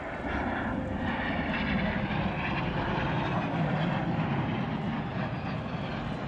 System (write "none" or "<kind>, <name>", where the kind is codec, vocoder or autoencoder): none